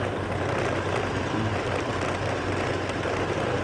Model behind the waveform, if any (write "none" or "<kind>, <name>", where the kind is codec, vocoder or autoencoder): none